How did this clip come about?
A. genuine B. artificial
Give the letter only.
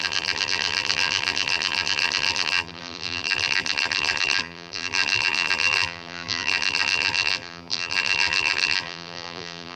B